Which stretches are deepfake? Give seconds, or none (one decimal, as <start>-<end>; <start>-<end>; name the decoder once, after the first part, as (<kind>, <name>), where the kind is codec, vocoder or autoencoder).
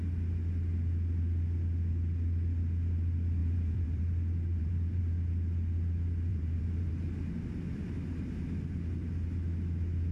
3.4-4.0 (vocoder, BigVGAN v2); 4.5-5.0; 6.3-6.9